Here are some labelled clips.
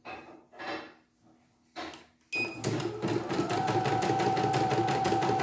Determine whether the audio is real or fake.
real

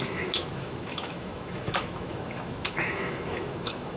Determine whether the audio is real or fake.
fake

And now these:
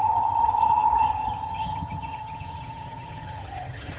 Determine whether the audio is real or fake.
fake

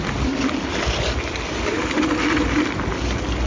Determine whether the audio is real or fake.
real